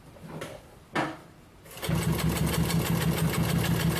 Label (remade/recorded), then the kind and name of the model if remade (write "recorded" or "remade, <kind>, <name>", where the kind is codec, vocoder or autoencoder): recorded